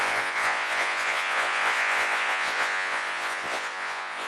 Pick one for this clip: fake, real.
fake